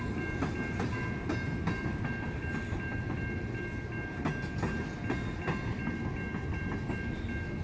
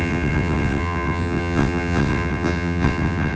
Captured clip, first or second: first